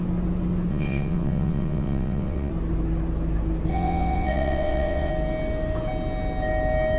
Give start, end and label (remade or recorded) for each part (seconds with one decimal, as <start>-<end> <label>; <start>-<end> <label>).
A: 0.0-0.7 recorded; 0.7-2.5 remade; 2.5-3.7 recorded; 3.7-5.1 remade; 5.1-7.0 recorded